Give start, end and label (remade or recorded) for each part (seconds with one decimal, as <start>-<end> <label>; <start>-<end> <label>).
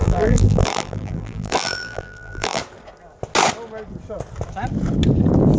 0.0-2.6 remade; 2.6-5.6 recorded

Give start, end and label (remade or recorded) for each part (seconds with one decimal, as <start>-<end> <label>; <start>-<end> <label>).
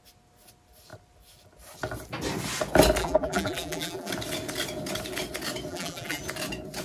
0.0-3.0 recorded; 3.0-4.1 remade; 4.1-5.7 recorded; 5.7-6.2 remade; 6.2-6.8 recorded